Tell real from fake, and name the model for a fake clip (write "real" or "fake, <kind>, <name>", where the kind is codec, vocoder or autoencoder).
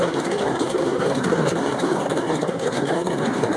fake, codec, SNAC